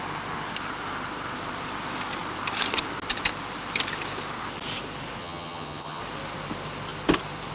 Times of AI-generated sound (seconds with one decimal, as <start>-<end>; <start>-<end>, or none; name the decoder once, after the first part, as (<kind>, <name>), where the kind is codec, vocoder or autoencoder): 5.2-6.0 (vocoder, HiFi-GAN)